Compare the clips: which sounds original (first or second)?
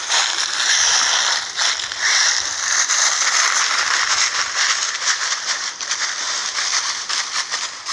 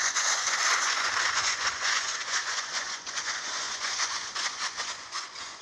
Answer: first